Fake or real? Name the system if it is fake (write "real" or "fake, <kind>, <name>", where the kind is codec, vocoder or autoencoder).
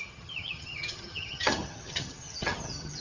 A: fake, vocoder, HiFi-GAN